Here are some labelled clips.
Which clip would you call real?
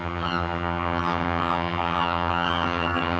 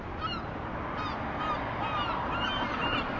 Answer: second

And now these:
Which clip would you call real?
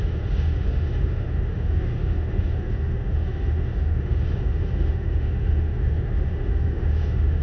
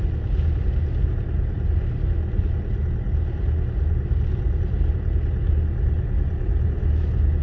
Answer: second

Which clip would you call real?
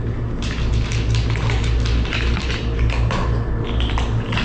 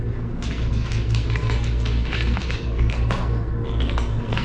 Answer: first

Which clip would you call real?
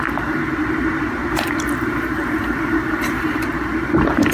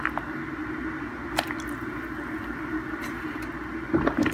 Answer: second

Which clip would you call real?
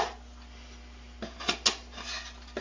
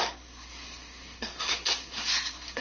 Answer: first